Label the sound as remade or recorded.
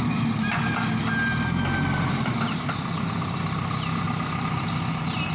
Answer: recorded